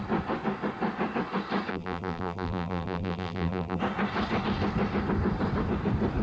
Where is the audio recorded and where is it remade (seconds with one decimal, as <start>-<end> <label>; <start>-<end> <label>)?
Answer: 0.0-1.7 recorded; 1.7-3.8 remade; 3.8-6.2 recorded